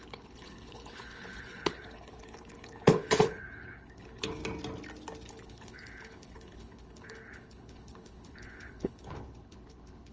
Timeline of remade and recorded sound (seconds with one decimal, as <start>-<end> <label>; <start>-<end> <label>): 0.0-4.4 remade; 4.4-5.3 recorded; 5.3-10.1 remade